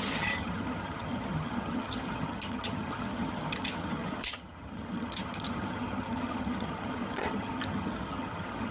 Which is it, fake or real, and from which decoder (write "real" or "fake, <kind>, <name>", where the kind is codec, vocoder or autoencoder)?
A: fake, vocoder, HiFi-GAN